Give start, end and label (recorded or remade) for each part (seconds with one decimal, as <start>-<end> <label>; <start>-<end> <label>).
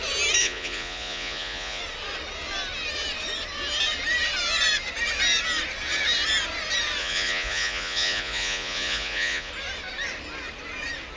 0.0-0.4 recorded; 0.4-1.8 remade; 1.8-7.0 recorded; 7.0-9.5 remade; 9.5-11.2 recorded